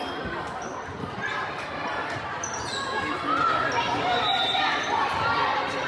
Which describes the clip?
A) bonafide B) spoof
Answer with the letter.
B